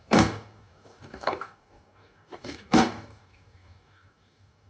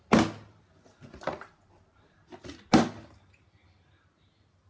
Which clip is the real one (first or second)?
second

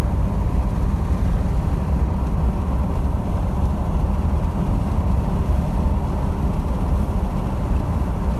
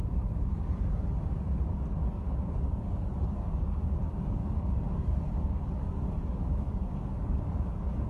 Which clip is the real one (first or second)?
first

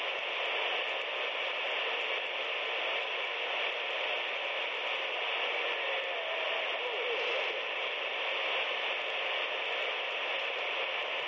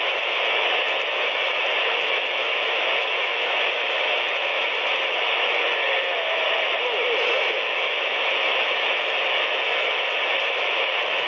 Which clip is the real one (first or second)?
first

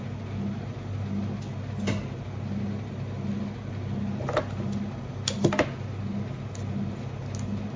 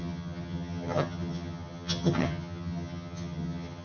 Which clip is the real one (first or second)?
first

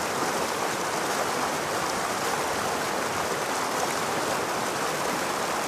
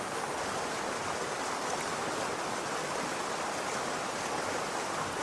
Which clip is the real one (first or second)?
first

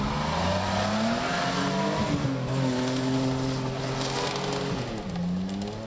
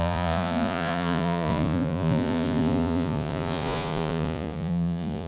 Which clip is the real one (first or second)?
first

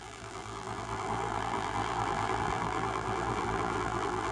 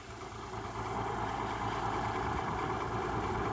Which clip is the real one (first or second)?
second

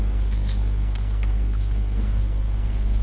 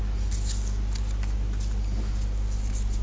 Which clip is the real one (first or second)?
second